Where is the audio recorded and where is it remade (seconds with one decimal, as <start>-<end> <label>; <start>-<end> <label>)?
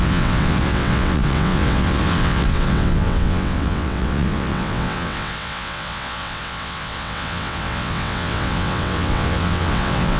0.0-10.2 remade